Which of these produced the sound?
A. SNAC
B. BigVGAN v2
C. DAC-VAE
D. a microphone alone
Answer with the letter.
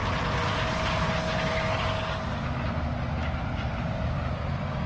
D